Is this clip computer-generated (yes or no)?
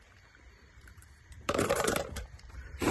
yes